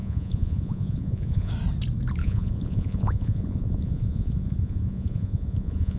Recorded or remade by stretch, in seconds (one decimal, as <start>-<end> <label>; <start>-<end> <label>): 0.0-1.5 remade; 1.5-2.2 recorded; 2.2-6.0 remade